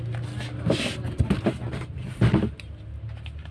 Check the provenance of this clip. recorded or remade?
recorded